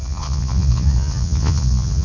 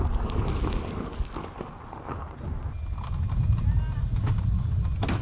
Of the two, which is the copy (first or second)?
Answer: first